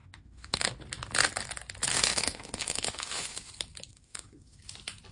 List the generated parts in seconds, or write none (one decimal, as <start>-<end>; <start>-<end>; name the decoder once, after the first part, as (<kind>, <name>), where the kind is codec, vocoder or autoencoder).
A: 0.0-0.7 (autoencoder, DAC-VAE); 1.9-3.5; 3.9-4.6